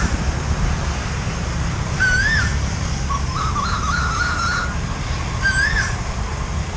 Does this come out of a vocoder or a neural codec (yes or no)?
no